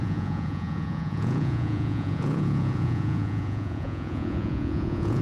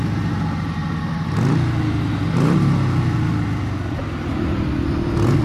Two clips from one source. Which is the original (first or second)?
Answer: second